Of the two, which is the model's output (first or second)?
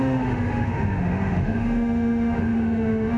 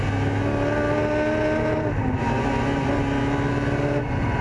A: first